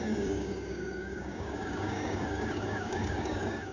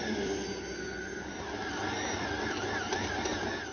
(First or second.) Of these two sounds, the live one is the second